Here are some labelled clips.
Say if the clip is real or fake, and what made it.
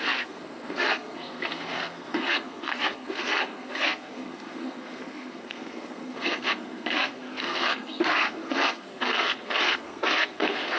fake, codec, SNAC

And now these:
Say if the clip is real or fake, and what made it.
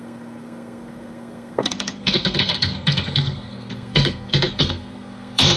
fake, codec, SNAC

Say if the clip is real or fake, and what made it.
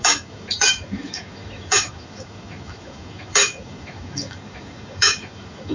fake, autoencoder, DAC-VAE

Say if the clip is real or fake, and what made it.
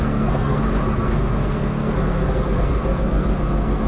fake, codec, SNAC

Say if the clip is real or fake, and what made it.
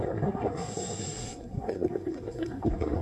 fake, codec, SNAC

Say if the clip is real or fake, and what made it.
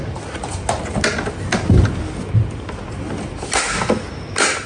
real